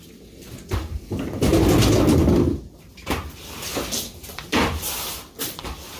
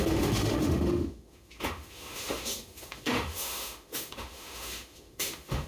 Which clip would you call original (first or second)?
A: first